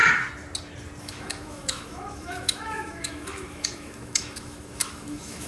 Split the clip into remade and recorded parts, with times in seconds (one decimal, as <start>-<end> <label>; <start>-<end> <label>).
0.0-1.0 recorded; 1.0-5.5 remade